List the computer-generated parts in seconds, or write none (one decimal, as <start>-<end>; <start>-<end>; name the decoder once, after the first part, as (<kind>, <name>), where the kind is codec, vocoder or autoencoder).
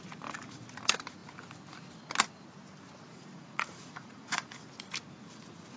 3.1-4.6 (vocoder, Vocos)